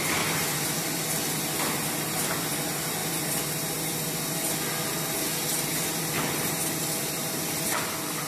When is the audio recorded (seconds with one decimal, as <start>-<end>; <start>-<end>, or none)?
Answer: 0.0-8.3